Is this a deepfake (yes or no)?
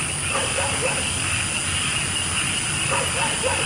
no